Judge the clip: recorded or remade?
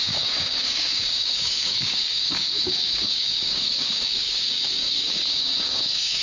remade